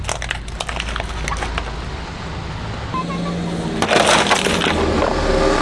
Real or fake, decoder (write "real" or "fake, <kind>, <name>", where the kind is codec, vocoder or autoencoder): real